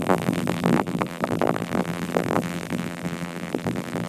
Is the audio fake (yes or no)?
yes